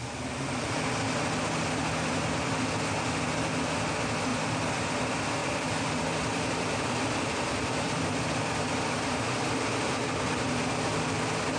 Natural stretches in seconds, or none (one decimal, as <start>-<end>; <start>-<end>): 0.0-4.3; 4.8-5.4; 10.3-11.6